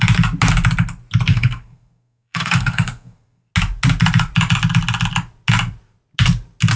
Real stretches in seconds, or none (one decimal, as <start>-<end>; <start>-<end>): 0.0-1.3; 3.5-6.8